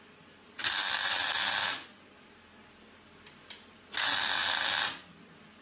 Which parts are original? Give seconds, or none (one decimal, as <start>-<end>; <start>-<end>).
0.0-5.6